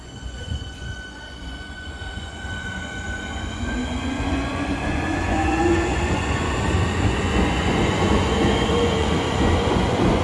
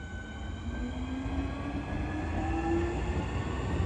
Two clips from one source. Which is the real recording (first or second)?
second